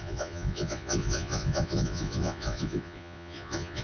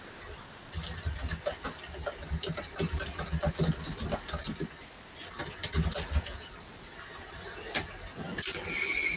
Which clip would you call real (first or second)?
second